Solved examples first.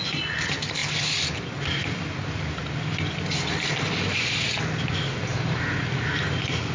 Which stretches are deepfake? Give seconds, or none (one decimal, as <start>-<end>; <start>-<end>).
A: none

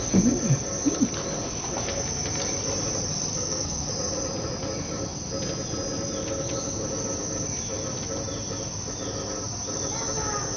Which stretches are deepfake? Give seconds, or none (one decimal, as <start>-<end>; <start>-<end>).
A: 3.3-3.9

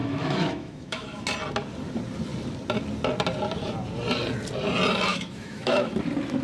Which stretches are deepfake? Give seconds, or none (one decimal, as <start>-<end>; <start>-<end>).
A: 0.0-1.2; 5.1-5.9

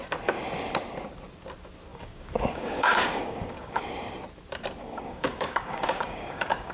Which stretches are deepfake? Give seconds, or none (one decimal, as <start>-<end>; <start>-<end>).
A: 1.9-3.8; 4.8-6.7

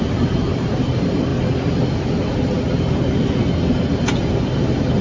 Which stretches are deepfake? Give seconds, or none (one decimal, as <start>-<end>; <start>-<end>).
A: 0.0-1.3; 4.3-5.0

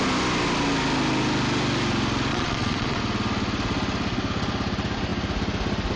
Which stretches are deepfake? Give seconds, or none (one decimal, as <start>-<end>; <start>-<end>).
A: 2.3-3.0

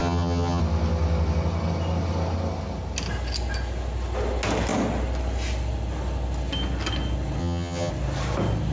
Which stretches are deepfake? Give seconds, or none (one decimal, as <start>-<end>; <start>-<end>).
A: 0.0-0.6; 7.4-7.9

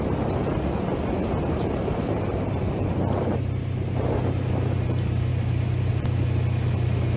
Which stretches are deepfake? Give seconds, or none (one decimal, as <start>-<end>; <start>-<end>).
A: none